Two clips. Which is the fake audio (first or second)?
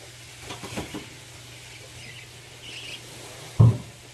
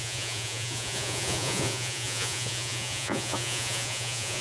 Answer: second